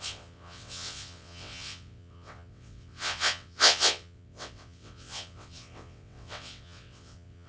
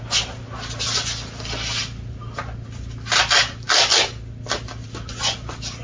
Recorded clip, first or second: second